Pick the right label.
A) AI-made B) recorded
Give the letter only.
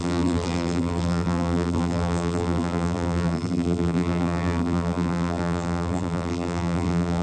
A